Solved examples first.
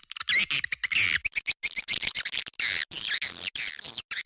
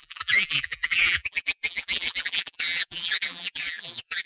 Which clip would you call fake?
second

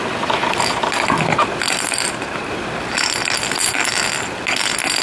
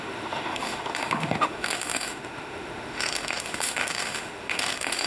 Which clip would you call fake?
second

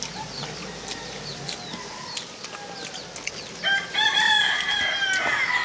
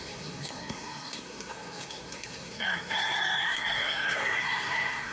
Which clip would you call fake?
second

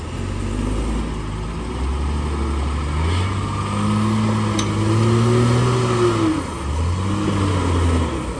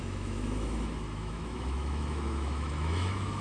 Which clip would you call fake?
second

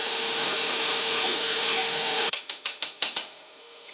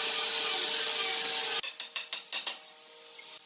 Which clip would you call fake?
first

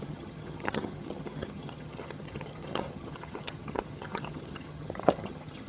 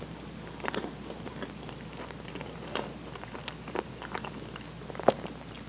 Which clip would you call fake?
first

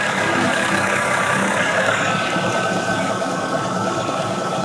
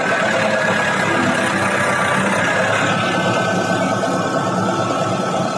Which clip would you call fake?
first